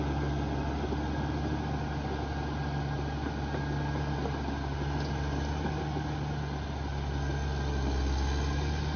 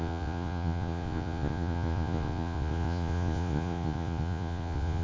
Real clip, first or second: first